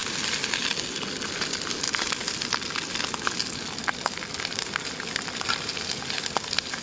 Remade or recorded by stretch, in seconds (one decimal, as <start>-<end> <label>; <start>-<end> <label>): 0.0-6.8 recorded